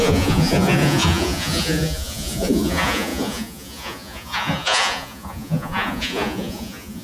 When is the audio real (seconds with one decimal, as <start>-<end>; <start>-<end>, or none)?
none